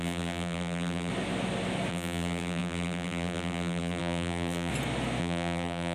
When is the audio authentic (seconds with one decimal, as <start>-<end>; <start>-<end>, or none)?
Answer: 1.1-1.9; 4.7-5.2